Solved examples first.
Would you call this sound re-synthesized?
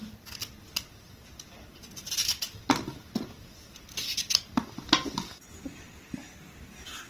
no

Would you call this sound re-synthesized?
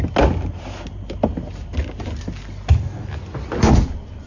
no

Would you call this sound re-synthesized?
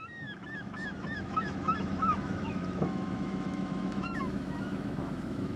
yes